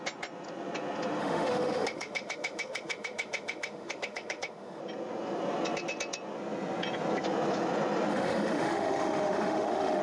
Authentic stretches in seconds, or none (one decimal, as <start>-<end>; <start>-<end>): 0.0-1.2; 4.8-8.1